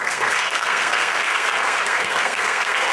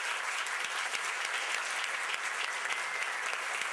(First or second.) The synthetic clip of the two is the first